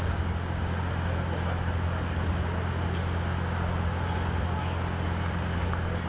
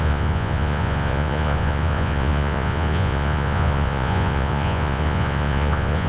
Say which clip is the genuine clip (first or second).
first